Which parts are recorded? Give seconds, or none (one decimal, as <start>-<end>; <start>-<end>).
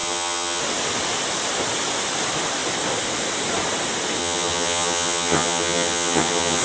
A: 0.6-4.2